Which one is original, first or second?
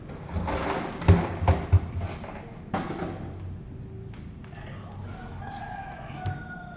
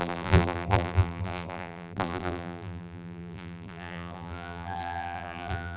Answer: first